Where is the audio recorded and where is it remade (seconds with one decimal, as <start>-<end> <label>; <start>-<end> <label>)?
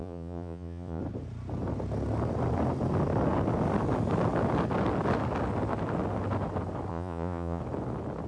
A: 0.0-1.0 remade; 1.0-6.9 recorded; 6.9-7.6 remade; 7.6-8.3 recorded